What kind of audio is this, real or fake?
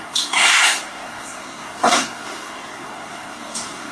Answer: fake